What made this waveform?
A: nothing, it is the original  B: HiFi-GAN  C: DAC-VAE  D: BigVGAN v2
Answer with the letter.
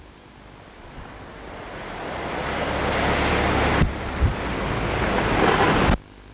A